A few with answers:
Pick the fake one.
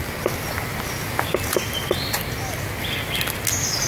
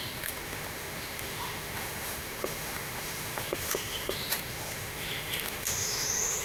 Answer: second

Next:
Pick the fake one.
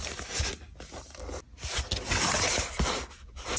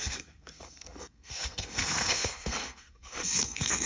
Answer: second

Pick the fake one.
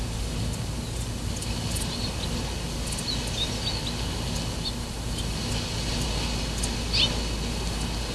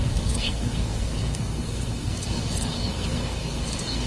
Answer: second